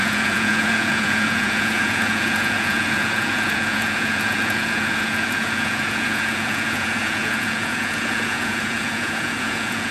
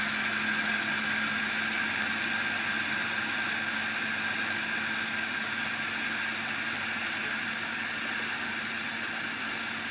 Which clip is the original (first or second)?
second